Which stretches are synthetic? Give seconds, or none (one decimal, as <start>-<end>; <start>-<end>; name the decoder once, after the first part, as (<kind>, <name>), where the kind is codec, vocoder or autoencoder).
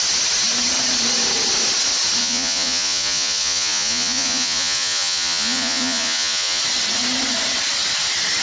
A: 2.2-6.6 (vocoder, Vocos)